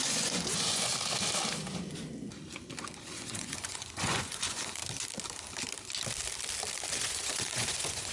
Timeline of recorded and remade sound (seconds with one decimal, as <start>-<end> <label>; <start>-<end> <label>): 0.0-0.9 remade; 0.9-3.0 recorded; 3.0-4.8 remade; 4.8-6.9 recorded; 6.9-8.1 remade